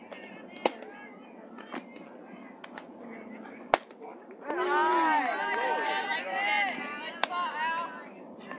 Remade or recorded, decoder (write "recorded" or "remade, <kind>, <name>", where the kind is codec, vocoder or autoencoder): recorded